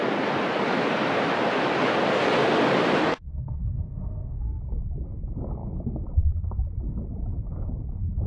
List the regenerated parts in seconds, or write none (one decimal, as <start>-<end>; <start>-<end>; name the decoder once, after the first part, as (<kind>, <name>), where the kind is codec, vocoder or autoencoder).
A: 3.0-4.6 (autoencoder, DAC-VAE)